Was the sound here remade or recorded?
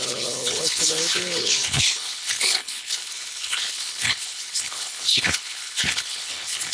remade